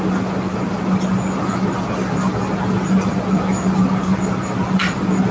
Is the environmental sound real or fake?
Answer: real